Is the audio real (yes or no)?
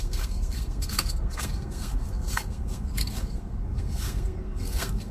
no